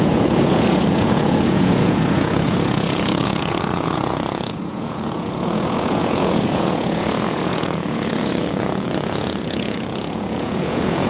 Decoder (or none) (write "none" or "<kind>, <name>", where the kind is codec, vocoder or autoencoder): vocoder, Vocos